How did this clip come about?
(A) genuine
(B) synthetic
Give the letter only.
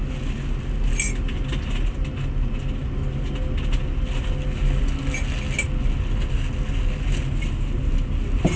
A